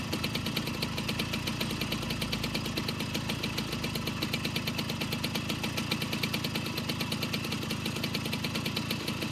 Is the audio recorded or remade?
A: recorded